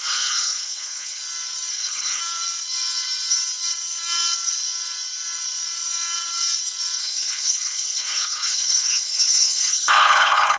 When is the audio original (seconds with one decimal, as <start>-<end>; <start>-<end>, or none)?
1.2-1.7; 2.2-7.0